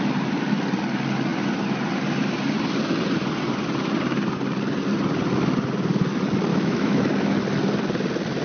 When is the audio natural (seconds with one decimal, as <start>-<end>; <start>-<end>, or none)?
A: 0.0-6.5; 7.0-8.4